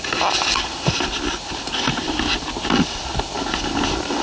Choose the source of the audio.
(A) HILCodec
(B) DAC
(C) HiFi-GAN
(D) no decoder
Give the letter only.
D